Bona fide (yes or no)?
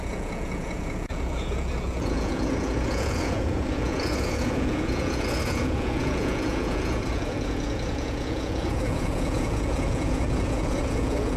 no